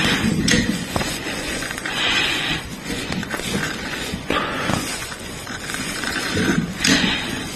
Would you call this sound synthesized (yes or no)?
yes